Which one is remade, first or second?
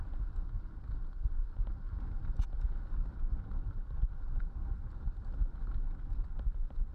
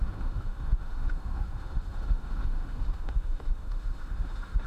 second